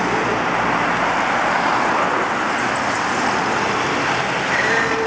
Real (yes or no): yes